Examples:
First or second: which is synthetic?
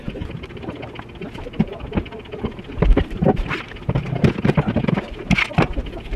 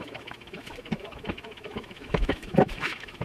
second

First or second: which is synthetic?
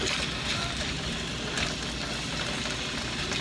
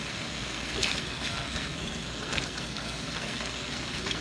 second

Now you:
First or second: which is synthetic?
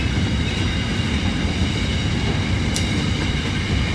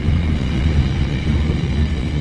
second